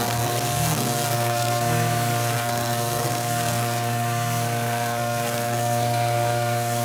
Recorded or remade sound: remade